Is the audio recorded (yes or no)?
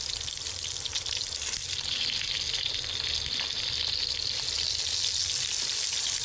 yes